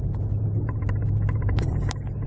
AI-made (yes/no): yes